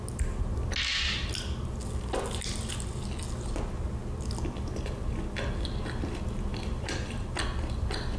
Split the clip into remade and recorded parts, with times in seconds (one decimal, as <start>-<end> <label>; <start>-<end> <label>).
0.0-6.5 recorded; 6.5-7.3 remade; 7.3-8.2 recorded